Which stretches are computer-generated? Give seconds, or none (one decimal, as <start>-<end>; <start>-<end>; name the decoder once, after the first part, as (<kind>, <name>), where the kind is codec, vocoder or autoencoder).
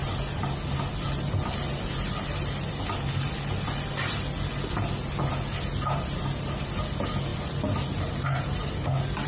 none